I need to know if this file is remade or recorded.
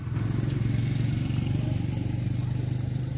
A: recorded